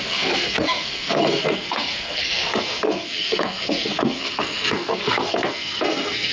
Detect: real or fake fake